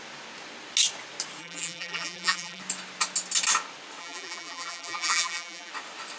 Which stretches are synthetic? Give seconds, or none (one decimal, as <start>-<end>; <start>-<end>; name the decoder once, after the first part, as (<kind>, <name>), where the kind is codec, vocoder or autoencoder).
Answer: 1.4-2.6 (vocoder, BigVGAN v2); 4.0-5.7